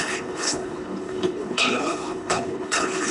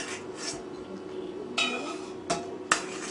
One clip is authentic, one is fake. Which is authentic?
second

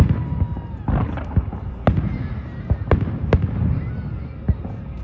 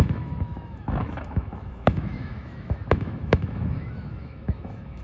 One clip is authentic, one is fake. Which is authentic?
first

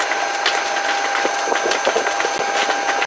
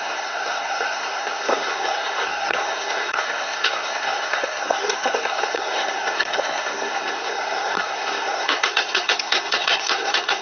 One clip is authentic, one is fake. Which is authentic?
first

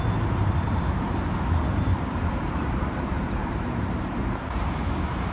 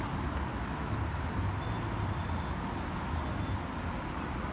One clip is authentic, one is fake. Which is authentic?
second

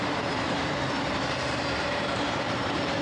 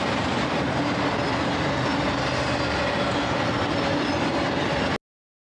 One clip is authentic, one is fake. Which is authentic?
second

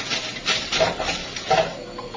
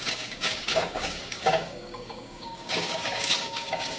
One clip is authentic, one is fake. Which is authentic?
first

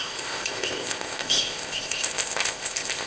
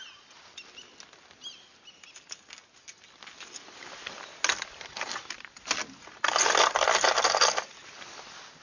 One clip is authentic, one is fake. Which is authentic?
second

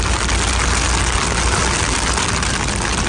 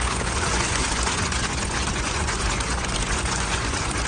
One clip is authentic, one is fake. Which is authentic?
first